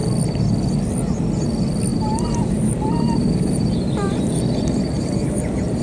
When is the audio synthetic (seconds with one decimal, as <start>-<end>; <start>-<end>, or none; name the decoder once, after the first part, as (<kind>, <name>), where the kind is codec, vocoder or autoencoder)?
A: 1.9-5.8 (vocoder, BigVGAN v2)